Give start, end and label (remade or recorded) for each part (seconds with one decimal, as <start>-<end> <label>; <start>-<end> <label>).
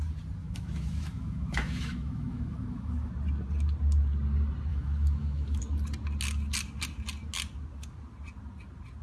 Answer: 0.0-0.4 recorded; 0.4-3.1 remade; 3.1-4.7 recorded; 4.7-5.6 remade; 5.6-9.0 recorded